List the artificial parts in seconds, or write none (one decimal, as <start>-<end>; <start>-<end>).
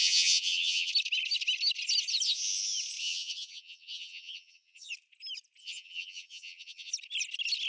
0.0-0.9; 3.0-4.9; 5.6-6.9